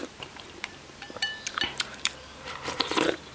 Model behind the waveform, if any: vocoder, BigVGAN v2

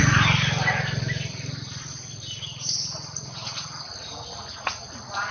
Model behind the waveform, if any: none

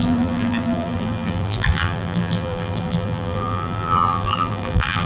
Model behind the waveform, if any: vocoder, BigVGAN v2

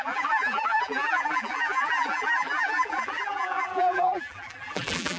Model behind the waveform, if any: vocoder, BigVGAN v2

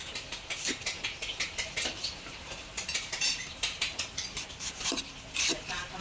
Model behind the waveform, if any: vocoder, BigVGAN v2